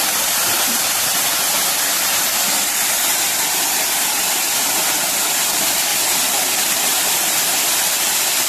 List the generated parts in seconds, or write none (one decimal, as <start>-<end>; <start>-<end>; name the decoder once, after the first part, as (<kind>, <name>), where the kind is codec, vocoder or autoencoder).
0.0-5.9 (vocoder, BigVGAN v2); 6.6-8.5